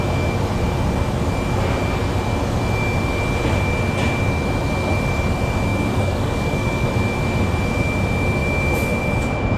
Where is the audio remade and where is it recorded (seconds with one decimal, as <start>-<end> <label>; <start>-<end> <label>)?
0.0-5.7 recorded; 5.7-6.9 remade; 6.9-9.6 recorded